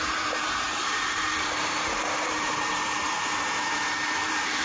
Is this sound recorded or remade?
remade